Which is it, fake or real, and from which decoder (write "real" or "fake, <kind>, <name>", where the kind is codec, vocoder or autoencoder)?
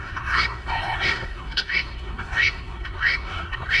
fake, codec, SNAC